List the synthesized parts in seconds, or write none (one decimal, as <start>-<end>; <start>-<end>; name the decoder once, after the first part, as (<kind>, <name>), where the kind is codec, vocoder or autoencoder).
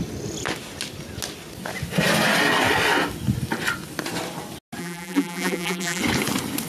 4.8-6.0 (vocoder, BigVGAN v2)